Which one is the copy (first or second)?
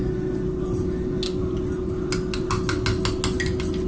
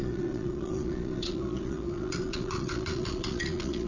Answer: second